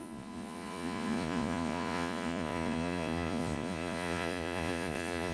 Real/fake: fake